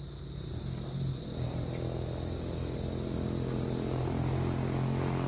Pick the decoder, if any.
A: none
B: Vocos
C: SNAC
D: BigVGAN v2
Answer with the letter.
A